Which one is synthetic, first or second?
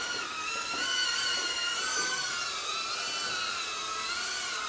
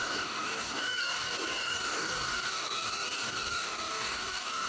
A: second